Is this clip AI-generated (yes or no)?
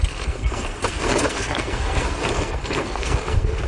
yes